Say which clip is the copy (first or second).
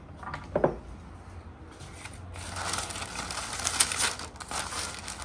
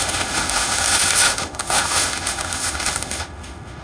second